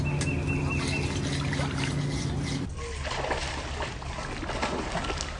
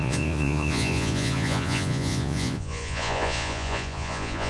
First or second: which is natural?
first